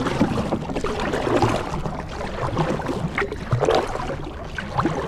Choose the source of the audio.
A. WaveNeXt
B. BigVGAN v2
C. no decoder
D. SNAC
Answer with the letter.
C